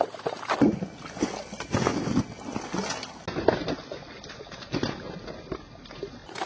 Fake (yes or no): no